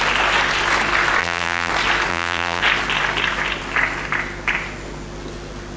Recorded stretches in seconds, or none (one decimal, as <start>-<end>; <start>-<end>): 0.0-1.2; 1.7-2.1; 2.6-5.8